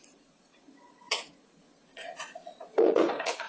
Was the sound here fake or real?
fake